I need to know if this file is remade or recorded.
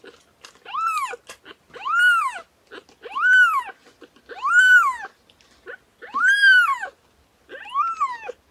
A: recorded